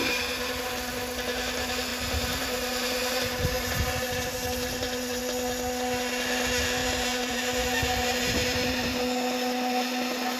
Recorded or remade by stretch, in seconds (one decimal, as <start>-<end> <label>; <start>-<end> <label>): 0.0-0.7 remade; 0.7-1.9 recorded; 1.9-5.2 remade; 5.2-6.8 recorded; 6.8-9.0 remade; 9.0-10.4 recorded